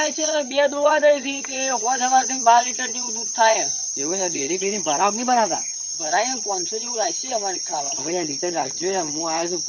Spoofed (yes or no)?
yes